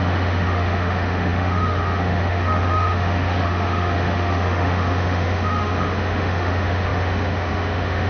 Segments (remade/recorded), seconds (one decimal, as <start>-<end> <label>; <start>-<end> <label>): 0.0-8.1 remade